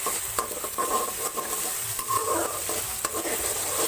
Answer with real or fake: real